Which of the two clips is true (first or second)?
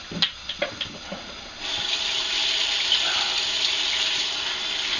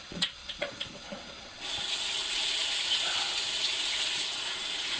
first